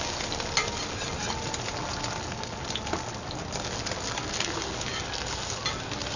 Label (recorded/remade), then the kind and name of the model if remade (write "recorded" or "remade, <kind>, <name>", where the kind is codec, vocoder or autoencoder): recorded